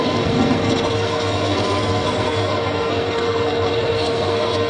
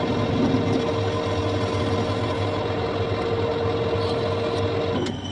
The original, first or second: second